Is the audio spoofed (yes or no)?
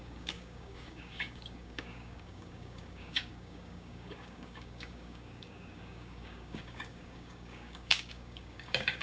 yes